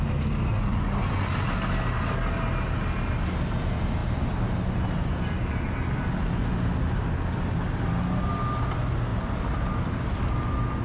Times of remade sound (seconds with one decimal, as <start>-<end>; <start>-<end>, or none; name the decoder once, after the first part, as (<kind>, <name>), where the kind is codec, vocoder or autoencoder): 9.1-9.8 (vocoder, BigVGAN v2)